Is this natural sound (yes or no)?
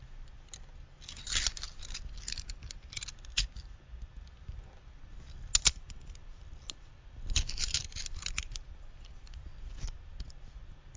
yes